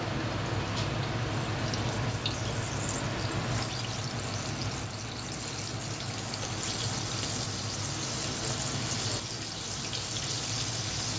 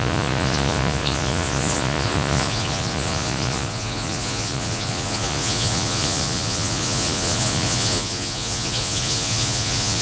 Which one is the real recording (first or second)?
first